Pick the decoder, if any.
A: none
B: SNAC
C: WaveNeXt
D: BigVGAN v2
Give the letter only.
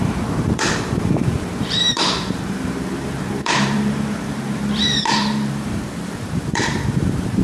D